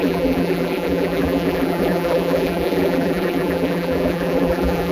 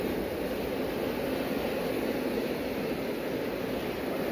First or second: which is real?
second